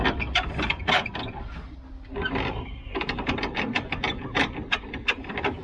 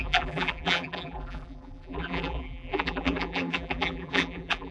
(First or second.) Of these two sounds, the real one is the first